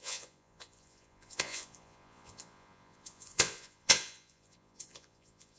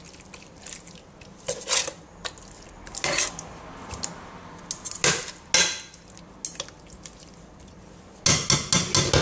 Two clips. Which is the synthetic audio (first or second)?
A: first